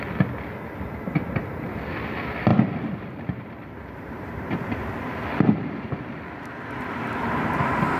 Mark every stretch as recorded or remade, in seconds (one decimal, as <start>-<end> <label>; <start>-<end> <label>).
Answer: 0.0-2.5 recorded; 2.5-6.2 remade; 6.2-8.0 recorded